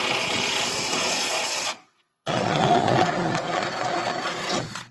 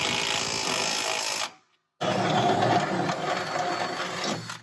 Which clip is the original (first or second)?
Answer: second